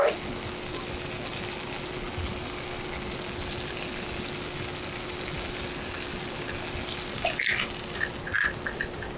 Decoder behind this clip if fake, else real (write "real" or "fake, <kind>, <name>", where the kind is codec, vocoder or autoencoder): real